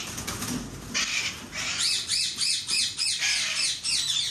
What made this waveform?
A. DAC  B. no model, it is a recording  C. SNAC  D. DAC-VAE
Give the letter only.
B